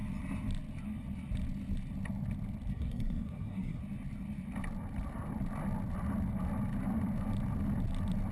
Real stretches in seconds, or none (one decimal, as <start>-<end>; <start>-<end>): 0.0-2.7; 3.8-8.3